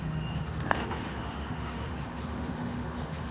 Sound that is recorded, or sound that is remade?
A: remade